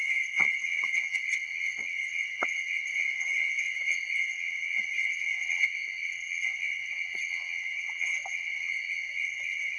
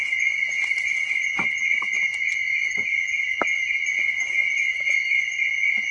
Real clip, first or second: second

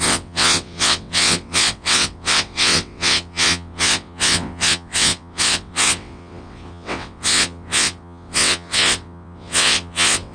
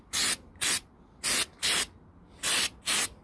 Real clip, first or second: second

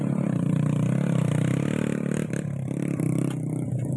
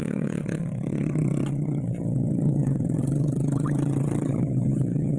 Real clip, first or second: first